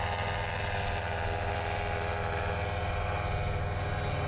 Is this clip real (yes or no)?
yes